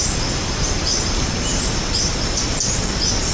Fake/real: real